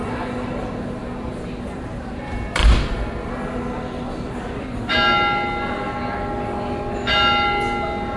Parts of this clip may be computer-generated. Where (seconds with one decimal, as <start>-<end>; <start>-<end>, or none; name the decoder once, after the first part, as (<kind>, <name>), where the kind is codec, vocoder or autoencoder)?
1.0-1.6 (vocoder, BigVGAN v2); 2.6-3.3